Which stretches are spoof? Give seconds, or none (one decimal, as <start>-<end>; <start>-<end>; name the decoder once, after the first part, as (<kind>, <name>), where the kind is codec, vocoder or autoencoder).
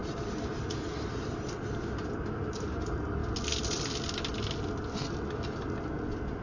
none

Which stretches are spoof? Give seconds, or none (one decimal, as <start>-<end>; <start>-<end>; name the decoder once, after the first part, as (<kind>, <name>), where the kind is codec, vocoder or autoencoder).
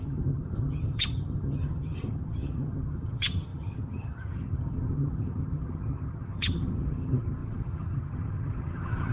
0.0-9.1 (vocoder, HiFi-GAN)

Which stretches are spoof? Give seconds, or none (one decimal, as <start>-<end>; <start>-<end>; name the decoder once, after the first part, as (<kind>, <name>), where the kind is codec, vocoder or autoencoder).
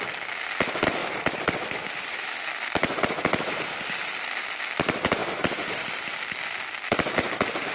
none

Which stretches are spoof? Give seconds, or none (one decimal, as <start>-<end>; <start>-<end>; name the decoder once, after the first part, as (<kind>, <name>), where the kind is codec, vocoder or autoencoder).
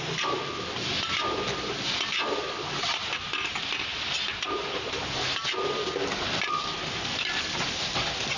none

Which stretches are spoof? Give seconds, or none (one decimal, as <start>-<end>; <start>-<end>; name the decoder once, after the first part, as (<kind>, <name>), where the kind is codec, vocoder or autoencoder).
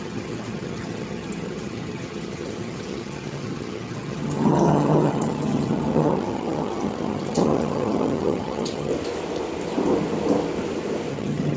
0.0-8.9 (vocoder, HiFi-GAN); 11.1-11.6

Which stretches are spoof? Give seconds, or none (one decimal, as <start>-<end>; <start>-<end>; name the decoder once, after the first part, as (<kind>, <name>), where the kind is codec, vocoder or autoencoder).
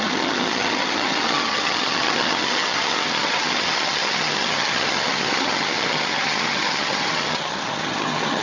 0.0-8.4 (vocoder, HiFi-GAN)